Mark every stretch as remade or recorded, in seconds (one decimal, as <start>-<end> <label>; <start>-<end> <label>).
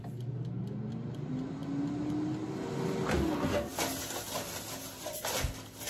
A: 0.0-5.9 recorded